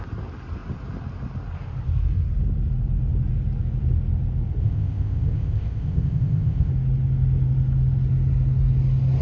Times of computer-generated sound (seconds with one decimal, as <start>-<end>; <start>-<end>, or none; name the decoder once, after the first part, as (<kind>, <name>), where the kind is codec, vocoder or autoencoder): 4.6-6.7 (codec, ZipCodec)